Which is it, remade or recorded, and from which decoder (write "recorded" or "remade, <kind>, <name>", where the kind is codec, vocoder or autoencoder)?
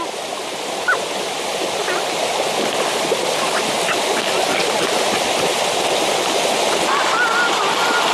recorded